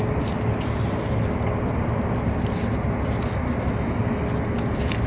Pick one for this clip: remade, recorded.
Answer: recorded